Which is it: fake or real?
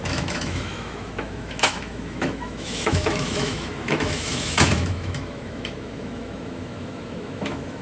fake